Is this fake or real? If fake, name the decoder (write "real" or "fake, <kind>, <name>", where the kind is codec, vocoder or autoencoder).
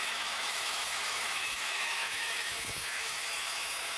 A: fake, autoencoder, DAC-VAE